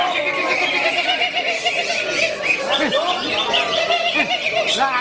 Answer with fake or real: real